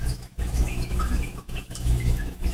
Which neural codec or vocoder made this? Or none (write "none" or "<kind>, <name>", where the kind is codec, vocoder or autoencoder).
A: autoencoder, DAC-VAE